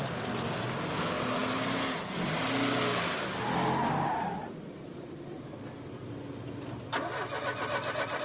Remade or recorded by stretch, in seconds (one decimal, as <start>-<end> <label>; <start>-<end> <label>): 0.0-8.2 recorded